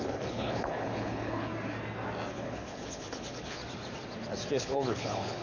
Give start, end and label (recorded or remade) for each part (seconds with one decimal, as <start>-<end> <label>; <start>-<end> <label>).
0.0-1.5 remade; 1.5-2.3 recorded; 2.3-3.6 remade; 3.6-4.6 recorded; 4.6-5.4 remade

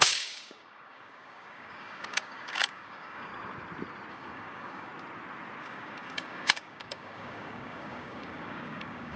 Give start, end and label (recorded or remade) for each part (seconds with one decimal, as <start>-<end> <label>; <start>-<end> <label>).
0.0-3.3 remade; 3.3-4.1 recorded; 4.1-4.9 remade; 4.9-5.6 recorded; 5.6-9.2 remade

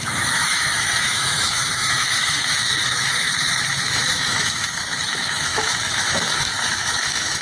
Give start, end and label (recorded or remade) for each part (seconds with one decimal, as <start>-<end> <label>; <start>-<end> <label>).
0.0-7.4 remade

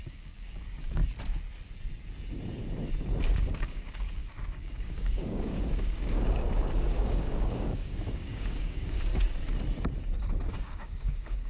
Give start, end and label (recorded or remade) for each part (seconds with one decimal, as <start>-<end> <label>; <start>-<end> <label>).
0.0-1.0 remade; 1.0-3.4 recorded; 3.4-9.1 remade; 9.1-10.5 recorded; 10.5-11.5 remade

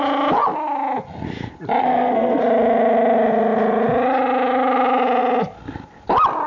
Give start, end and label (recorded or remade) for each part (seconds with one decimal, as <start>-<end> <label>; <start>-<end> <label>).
0.0-1.8 recorded; 1.8-2.4 remade; 2.4-6.5 recorded

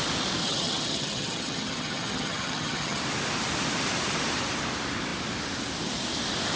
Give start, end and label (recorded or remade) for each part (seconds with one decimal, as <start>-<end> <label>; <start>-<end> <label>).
0.0-0.4 recorded; 0.4-3.0 remade; 3.0-6.6 recorded

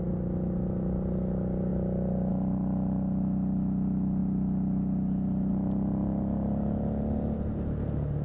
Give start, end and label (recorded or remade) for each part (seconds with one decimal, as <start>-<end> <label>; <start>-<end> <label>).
0.0-8.2 recorded